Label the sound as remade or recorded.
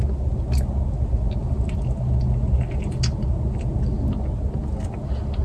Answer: recorded